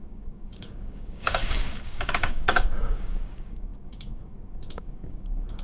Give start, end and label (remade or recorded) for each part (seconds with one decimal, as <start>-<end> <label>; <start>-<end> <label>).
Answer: 0.0-5.6 remade